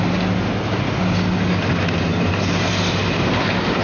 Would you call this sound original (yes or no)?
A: yes